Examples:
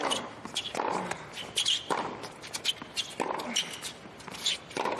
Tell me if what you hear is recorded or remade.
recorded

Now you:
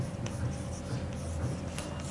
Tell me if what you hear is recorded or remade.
recorded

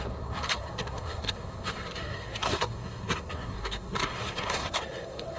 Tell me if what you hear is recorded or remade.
remade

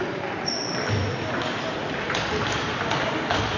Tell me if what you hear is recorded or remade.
recorded